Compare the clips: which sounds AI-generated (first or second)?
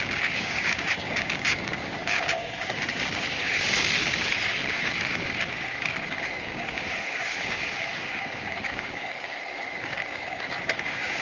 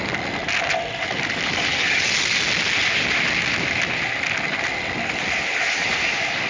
first